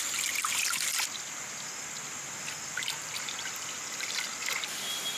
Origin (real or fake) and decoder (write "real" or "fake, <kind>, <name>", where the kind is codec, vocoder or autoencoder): fake, vocoder, BigVGAN v2